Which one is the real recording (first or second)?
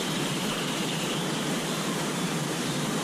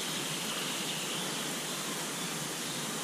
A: second